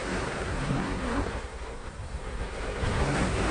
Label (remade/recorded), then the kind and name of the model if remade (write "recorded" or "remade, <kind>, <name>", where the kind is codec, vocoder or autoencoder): remade, codec, SNAC